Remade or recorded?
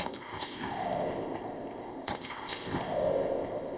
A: remade